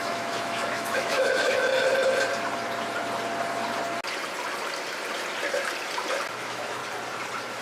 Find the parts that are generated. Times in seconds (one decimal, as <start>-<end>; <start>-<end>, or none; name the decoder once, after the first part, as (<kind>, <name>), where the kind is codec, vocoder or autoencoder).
0.0-1.7 (autoencoder, DAC-VAE); 6.3-6.8